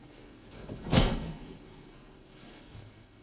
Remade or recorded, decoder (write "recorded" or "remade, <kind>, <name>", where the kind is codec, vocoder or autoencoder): remade, codec, SNAC